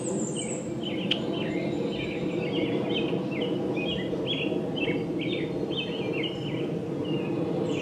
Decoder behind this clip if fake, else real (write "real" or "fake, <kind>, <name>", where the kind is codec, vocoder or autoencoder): real